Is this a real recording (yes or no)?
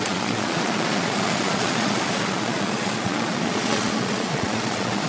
no